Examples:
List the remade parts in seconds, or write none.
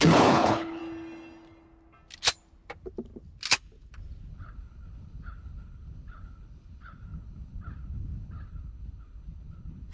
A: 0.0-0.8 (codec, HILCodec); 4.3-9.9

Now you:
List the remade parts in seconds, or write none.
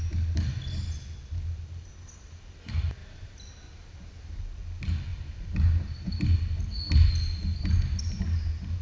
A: 3.0-4.4 (vocoder, BigVGAN v2); 5.1-6.1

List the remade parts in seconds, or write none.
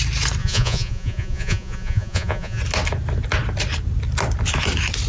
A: 0.4-2.6 (vocoder, Vocos)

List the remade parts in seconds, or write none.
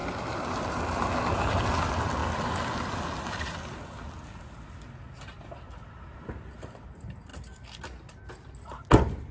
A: none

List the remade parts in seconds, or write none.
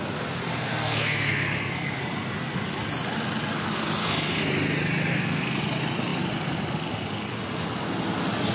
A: 0.4-2.0 (codec, SNAC); 4.0-4.5; 5.1-5.6